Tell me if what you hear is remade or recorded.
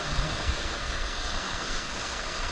remade